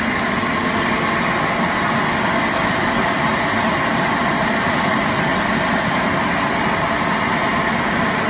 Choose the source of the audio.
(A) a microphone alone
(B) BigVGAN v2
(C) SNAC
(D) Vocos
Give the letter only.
A